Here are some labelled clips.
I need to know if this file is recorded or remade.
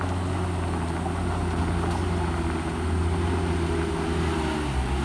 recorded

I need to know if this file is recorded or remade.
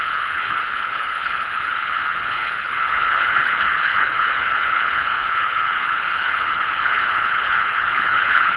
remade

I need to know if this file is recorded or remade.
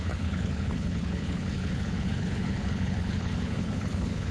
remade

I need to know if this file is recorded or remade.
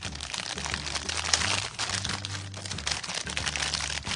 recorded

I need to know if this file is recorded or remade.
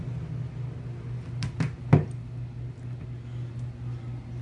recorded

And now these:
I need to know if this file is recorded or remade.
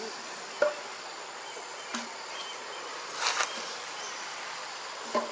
recorded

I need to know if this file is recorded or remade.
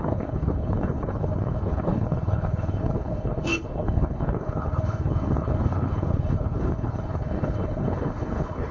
remade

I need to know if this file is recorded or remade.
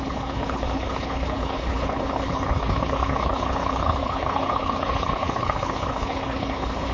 remade